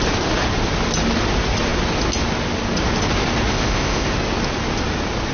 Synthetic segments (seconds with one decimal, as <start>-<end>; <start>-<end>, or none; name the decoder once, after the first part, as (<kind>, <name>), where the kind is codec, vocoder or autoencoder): 3.5-4.1 (codec, ZipCodec)